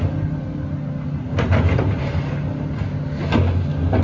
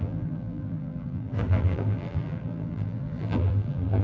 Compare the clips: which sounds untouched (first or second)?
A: first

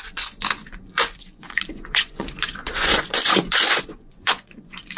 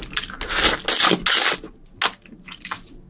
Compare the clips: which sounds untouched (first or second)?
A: second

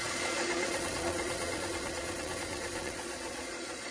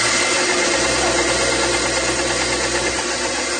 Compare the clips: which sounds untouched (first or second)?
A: second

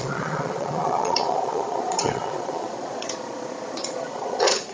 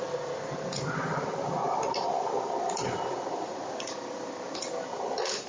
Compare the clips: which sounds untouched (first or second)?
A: second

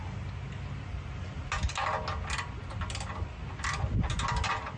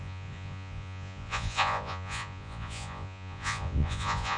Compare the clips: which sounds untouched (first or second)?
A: first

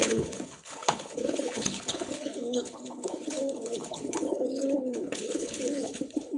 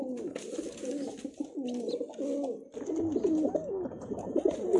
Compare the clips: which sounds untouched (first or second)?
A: second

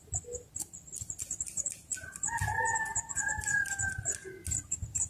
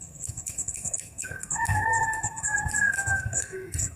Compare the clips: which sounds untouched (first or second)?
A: first